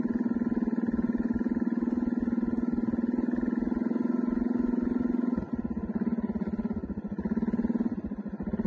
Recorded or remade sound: recorded